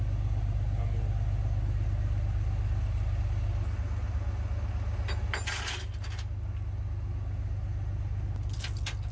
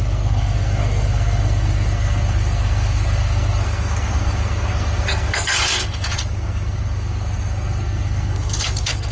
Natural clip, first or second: first